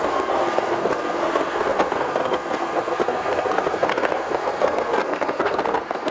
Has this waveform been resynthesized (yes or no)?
yes